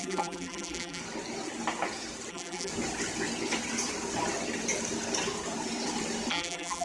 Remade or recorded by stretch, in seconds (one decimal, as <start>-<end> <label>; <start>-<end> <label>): 0.0-1.0 remade; 1.0-2.3 recorded; 2.3-2.7 remade; 2.7-6.3 recorded; 6.3-6.8 remade